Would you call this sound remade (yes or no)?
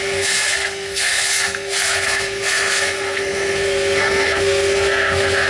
yes